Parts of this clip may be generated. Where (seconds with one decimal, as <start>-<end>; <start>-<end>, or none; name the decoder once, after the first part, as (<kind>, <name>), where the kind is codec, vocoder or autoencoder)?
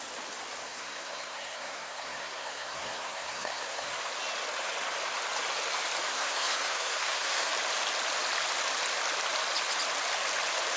0.6-3.9 (codec, SNAC); 6.1-7.5